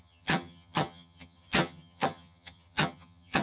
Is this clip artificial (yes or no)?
yes